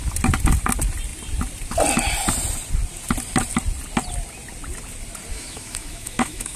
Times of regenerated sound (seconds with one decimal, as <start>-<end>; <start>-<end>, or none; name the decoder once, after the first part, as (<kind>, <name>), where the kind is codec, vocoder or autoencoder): 5.3-6.6 (autoencoder, DAC-VAE)